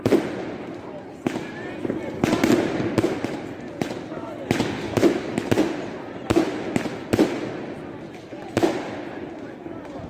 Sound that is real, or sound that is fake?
real